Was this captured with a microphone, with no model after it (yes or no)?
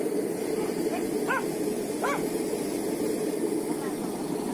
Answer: yes